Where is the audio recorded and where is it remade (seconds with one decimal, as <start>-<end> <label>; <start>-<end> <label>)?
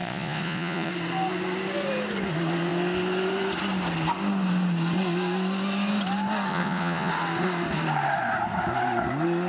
0.0-0.9 remade; 0.9-6.5 recorded; 6.5-7.1 remade; 7.1-9.5 recorded